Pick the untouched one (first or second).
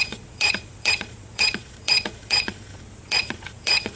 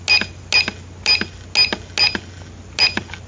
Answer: second